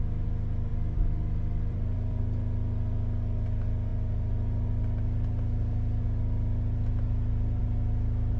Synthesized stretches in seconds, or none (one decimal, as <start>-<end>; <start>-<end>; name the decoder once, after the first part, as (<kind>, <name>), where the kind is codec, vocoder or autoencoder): 0.7-2.2 (vocoder, BigVGAN v2)